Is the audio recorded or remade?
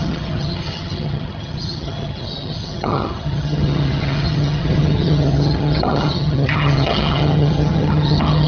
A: remade